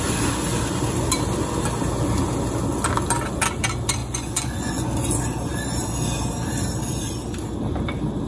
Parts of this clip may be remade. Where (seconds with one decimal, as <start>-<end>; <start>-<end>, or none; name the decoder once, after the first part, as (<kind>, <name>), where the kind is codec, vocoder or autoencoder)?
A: 4.0-4.9 (vocoder, Vocos)